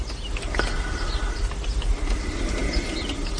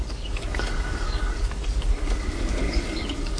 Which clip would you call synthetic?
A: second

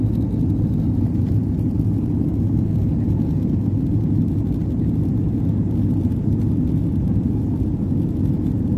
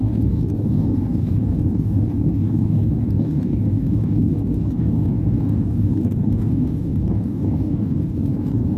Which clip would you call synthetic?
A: second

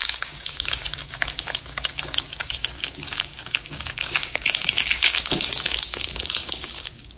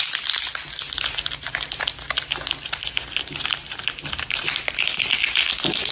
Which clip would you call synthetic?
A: first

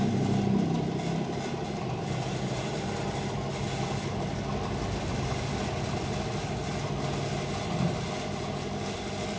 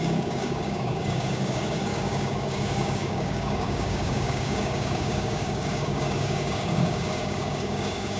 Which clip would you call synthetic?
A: second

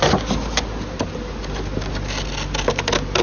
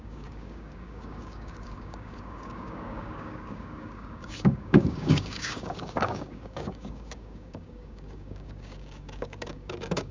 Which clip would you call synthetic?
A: second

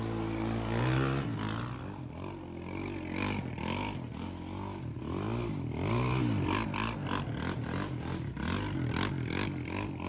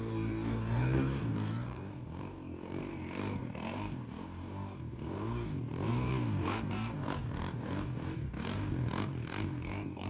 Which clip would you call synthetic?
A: second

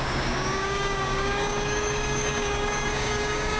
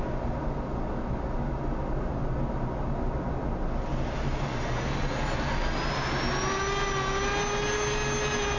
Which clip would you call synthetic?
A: first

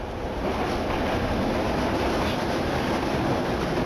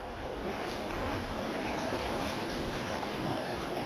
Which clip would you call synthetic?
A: second